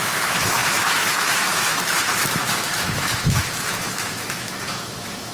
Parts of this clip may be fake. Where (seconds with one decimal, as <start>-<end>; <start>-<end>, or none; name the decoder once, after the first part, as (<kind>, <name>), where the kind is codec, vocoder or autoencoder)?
0.0-5.3 (autoencoder, DAC-VAE)